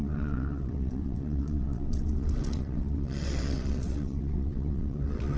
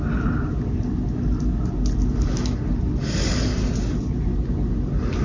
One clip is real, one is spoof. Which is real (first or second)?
second